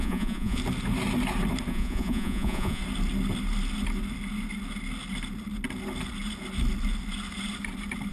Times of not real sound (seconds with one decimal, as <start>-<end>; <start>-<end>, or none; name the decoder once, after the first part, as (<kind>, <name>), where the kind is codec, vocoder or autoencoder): 0.0-0.6 (vocoder, Vocos); 1.7-2.8